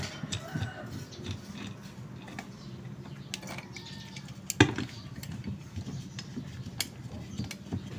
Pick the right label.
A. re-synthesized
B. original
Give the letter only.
B